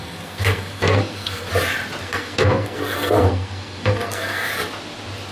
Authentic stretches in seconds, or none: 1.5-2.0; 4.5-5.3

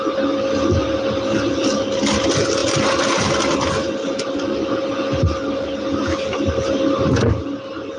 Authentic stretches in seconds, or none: 0.0-8.0